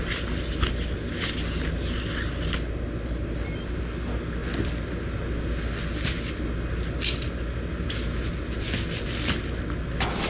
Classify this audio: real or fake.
real